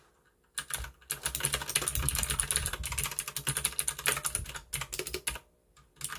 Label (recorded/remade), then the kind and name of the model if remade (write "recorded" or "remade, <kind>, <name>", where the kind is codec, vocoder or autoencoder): recorded